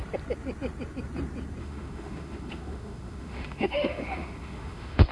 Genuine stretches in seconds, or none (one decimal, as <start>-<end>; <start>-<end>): 0.0-1.6